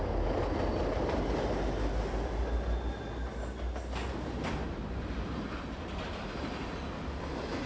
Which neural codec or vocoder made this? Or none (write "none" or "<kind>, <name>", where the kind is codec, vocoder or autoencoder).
none